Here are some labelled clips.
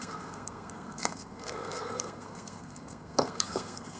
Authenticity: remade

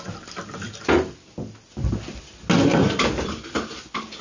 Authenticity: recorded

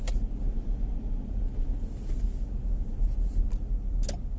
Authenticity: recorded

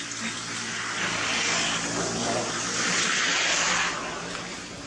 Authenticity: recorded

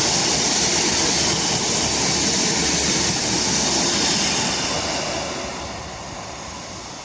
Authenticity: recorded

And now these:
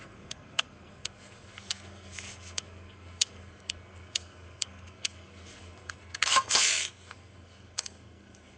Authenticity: remade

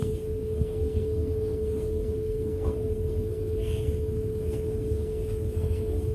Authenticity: remade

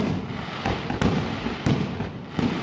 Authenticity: recorded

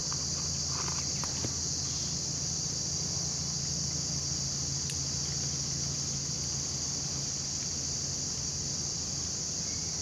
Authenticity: recorded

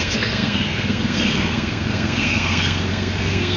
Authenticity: remade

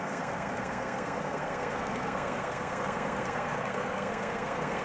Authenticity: remade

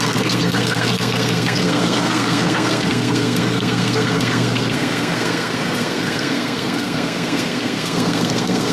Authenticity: remade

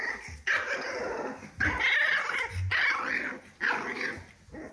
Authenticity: recorded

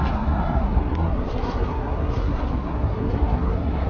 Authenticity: remade